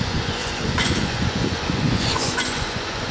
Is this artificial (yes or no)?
yes